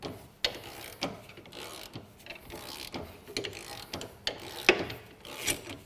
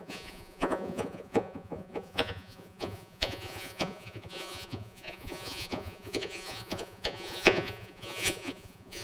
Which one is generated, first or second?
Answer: second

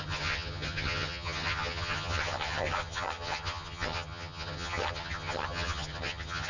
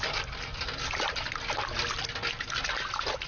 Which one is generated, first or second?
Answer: first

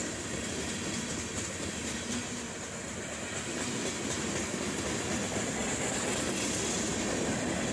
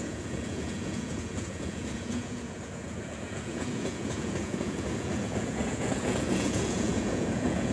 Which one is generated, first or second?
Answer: second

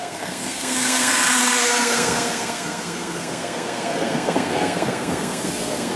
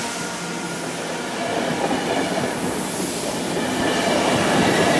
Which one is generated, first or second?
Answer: first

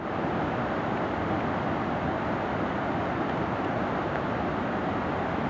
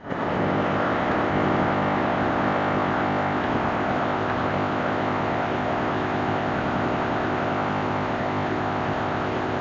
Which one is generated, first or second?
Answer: second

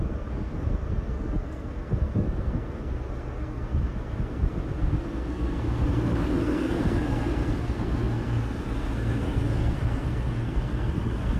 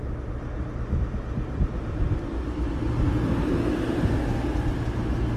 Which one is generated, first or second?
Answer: first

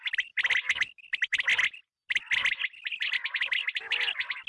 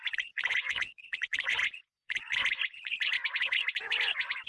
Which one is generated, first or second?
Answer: second